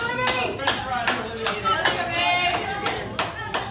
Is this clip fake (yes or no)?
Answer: no